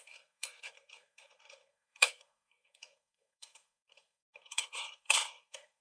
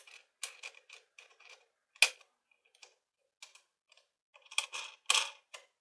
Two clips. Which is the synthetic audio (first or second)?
first